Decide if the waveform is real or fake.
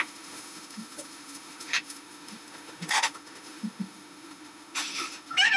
fake